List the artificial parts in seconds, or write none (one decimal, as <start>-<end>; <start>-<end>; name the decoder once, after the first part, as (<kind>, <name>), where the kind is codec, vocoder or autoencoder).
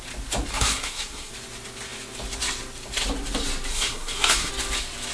0.5-1.3 (codec, SNAC); 3.7-4.5